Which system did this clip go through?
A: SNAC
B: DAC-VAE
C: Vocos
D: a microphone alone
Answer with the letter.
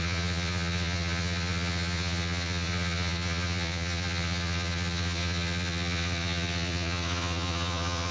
C